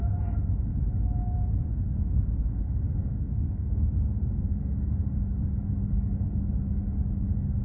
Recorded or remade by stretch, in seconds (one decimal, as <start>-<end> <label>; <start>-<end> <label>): 0.0-1.7 recorded; 1.7-2.6 remade; 2.6-3.0 recorded; 3.0-4.8 remade; 4.8-6.2 recorded; 6.2-6.7 remade; 6.7-7.6 recorded